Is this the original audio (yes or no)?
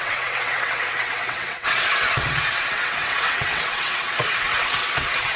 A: no